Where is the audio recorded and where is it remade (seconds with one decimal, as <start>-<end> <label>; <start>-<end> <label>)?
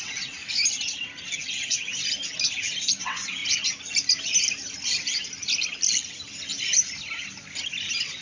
0.0-0.4 remade; 0.4-1.4 recorded; 1.4-1.9 remade; 1.9-3.0 recorded; 3.0-3.4 remade; 3.4-8.2 recorded